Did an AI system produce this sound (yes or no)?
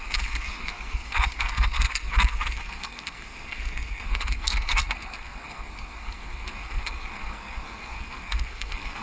yes